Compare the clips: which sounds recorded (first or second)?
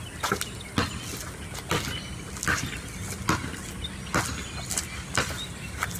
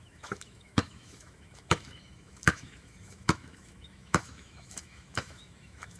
first